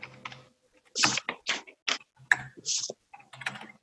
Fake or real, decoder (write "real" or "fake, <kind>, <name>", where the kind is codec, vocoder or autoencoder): real